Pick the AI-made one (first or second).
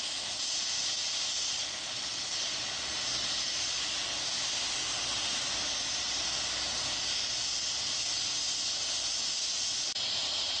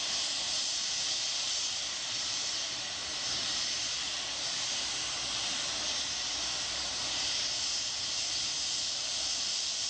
second